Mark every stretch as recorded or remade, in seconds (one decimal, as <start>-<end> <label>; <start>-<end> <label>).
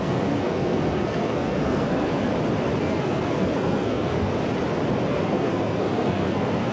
0.0-2.3 remade; 2.3-2.8 recorded; 2.8-4.3 remade; 4.3-5.1 recorded; 5.1-6.7 remade